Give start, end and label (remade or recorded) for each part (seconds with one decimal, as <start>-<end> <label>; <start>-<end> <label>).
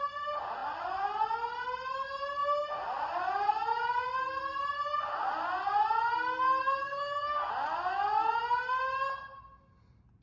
0.0-6.8 recorded; 6.8-7.5 remade; 7.5-10.2 recorded